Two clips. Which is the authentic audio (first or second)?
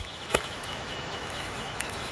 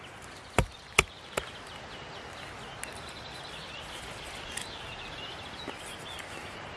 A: second